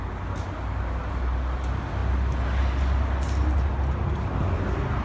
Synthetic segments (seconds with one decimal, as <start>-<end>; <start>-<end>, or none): none